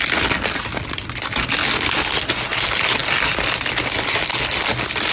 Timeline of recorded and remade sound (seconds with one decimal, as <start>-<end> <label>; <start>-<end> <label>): 0.0-5.1 recorded